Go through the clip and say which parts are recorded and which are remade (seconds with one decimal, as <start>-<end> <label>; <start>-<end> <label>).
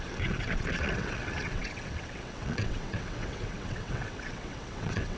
0.0-5.2 remade